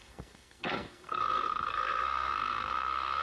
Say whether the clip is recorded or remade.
remade